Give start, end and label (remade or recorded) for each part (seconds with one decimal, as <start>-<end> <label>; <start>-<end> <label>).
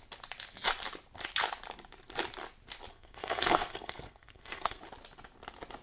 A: 0.0-2.9 recorded; 2.9-4.8 remade; 4.8-5.8 recorded